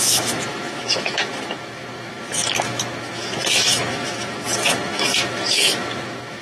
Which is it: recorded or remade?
remade